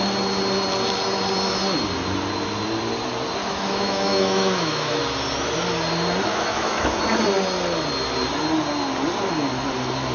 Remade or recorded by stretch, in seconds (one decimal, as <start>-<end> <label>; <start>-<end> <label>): 0.0-3.4 recorded; 3.4-5.0 remade; 5.0-6.3 recorded; 6.3-7.0 remade; 7.0-10.1 recorded